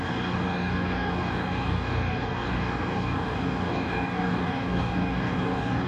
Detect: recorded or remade remade